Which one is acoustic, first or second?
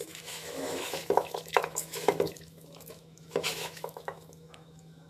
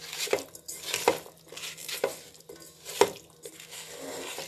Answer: second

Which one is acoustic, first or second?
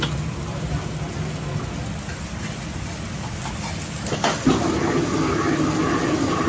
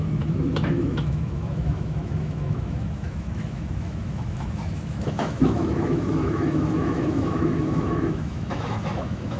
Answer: first